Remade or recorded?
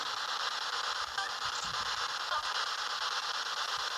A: recorded